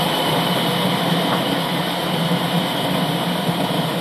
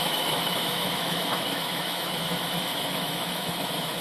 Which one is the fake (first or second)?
second